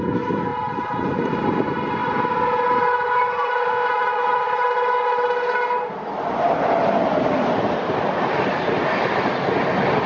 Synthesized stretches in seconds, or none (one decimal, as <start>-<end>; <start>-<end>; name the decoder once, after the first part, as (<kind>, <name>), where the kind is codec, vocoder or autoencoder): none